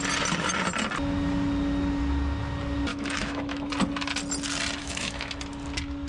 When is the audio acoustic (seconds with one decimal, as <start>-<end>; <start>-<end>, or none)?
0.0-2.9; 3.7-4.8; 5.3-6.1